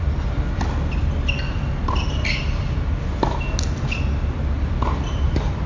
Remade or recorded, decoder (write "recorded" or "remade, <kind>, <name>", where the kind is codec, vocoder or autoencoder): recorded